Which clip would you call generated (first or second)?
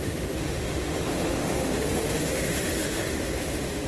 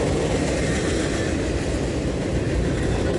first